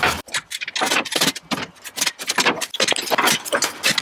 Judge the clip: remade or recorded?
recorded